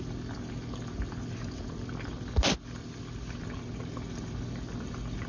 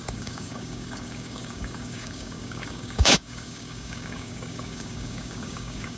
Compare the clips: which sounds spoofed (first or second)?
second